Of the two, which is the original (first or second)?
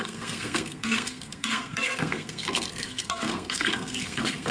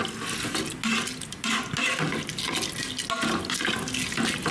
second